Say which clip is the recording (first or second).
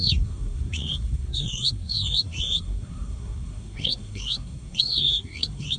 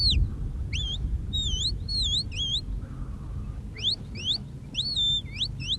second